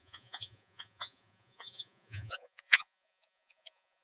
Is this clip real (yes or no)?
no